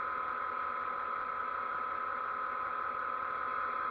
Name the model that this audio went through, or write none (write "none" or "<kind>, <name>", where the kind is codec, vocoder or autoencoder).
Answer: none